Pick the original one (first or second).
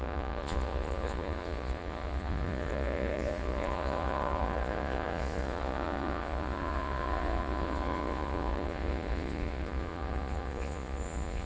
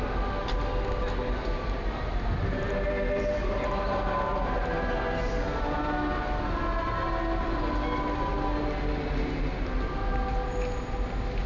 second